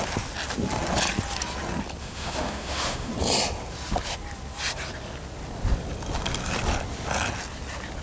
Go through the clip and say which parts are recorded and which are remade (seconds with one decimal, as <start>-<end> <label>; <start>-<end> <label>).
0.0-2.0 recorded; 2.0-3.1 remade; 3.1-8.0 recorded